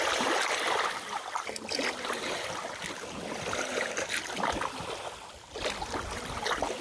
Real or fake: real